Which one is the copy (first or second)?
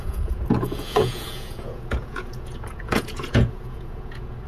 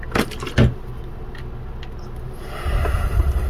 first